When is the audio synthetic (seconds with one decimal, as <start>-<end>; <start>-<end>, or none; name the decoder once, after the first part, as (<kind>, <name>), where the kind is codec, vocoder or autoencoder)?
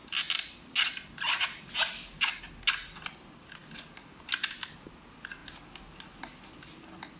none